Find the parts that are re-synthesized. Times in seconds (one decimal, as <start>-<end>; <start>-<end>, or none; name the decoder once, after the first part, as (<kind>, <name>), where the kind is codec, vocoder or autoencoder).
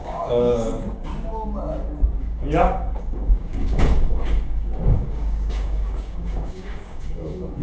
0.0-1.1 (codec, DAC); 2.2-7.6